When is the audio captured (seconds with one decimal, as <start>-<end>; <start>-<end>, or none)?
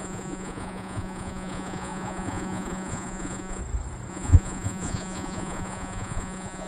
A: 3.6-4.1